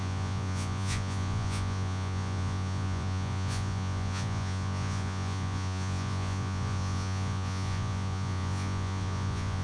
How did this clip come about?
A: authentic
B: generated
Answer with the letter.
B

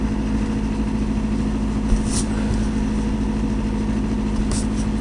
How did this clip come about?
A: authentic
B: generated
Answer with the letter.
A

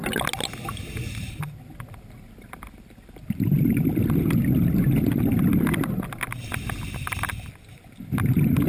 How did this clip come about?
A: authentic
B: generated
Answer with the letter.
A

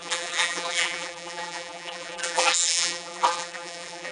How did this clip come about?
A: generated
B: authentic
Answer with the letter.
A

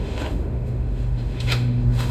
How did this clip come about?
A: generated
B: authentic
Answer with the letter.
A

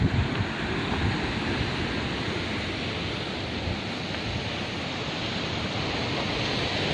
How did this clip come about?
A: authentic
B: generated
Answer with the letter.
A